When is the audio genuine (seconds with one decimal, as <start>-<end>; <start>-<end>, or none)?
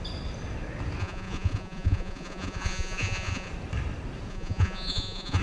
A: 0.0-1.0; 3.5-4.3